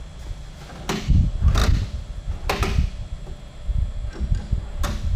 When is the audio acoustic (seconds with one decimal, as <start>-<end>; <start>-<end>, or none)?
0.0-5.2